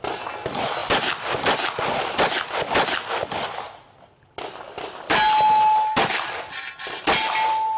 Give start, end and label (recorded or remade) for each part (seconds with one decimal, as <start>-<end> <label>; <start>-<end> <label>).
0.0-7.8 recorded